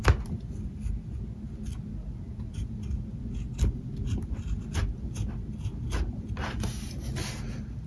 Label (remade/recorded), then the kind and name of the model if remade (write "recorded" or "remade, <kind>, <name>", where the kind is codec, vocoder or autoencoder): recorded